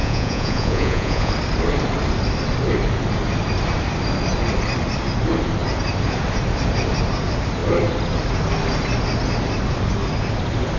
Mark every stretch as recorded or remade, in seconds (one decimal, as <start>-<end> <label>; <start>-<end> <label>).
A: 0.0-1.3 remade; 1.3-10.8 recorded